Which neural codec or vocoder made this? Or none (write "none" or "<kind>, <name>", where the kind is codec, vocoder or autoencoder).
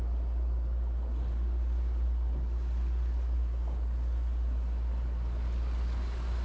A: none